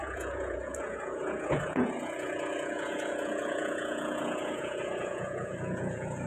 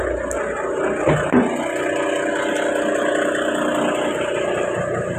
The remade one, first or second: first